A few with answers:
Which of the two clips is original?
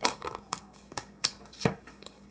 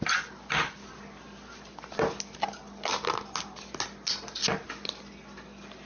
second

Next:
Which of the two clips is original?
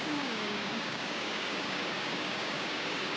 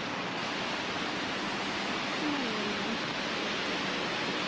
second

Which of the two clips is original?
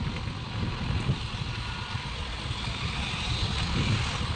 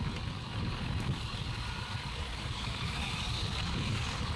first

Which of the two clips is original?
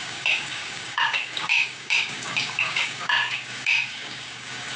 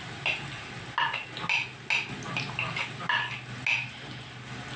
second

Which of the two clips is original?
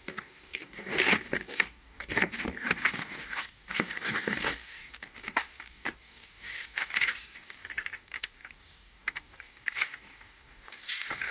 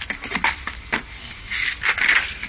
second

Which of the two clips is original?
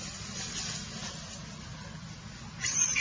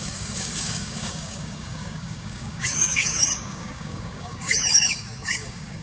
first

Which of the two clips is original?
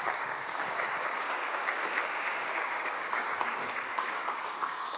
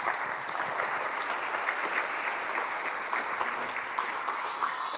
second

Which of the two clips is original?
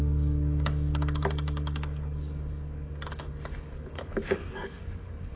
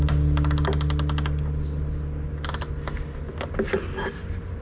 second